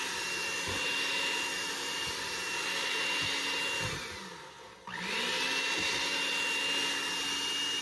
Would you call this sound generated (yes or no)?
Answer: no